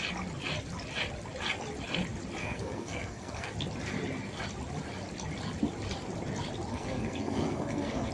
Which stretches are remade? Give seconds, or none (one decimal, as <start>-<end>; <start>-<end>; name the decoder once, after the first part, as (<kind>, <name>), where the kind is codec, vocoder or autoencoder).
2.4-3.5 (codec, SNAC); 6.7-8.1